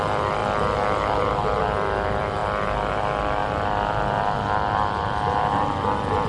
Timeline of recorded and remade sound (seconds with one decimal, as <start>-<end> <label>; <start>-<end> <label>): 0.0-0.4 remade; 0.4-1.6 recorded; 1.6-2.4 remade; 2.4-2.9 recorded; 2.9-6.3 remade